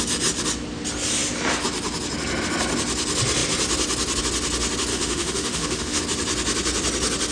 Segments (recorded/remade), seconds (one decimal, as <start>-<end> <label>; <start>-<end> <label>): 0.0-4.9 recorded; 4.9-6.0 remade; 6.0-7.3 recorded